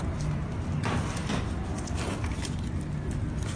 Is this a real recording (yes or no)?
yes